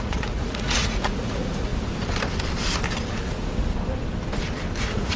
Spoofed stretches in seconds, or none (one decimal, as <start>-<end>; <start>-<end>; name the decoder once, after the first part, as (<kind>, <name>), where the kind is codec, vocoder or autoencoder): 0.0-1.7 (vocoder, Vocos); 4.8-5.2